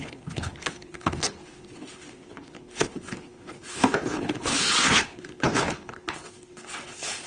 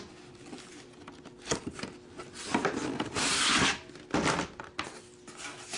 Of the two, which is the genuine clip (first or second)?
second